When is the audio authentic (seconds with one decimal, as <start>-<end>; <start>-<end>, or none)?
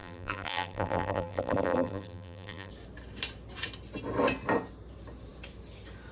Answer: 2.7-6.1